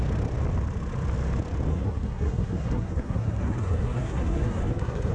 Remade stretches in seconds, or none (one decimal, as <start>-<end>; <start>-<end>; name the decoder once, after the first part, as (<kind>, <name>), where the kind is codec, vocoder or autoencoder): 1.7-5.1 (codec, SNAC)